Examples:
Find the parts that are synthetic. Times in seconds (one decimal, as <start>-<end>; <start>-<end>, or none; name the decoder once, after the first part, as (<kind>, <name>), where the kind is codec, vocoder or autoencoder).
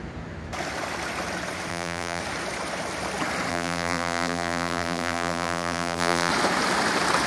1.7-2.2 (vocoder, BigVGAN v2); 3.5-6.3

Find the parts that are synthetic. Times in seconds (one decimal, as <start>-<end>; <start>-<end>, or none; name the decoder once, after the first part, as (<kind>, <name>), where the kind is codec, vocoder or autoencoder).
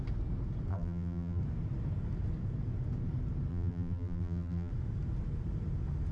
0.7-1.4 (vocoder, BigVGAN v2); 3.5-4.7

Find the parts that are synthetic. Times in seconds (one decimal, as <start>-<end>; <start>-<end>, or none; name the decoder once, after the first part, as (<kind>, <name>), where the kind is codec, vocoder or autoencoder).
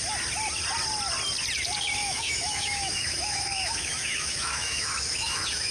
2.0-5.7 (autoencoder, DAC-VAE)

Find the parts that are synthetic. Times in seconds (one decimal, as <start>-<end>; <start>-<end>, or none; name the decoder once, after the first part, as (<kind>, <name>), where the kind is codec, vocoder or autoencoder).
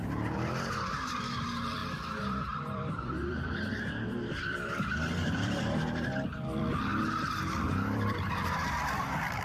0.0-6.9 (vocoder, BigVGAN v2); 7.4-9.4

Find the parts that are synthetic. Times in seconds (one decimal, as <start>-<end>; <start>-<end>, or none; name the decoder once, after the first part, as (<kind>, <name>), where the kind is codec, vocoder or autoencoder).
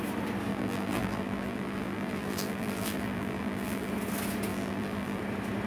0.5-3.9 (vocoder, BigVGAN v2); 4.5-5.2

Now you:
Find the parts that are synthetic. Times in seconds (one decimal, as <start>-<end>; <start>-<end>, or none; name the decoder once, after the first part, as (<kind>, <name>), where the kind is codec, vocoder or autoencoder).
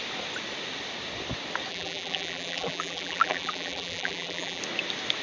1.7-4.6 (vocoder, BigVGAN v2)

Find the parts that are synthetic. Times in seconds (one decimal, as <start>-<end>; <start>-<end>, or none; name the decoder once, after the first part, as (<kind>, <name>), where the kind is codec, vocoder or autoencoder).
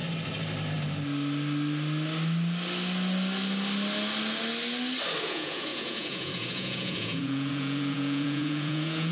5.2-9.1 (vocoder, Vocos)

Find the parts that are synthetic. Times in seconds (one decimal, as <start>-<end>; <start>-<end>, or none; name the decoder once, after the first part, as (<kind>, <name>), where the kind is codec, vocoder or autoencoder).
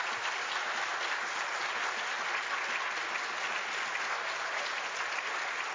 none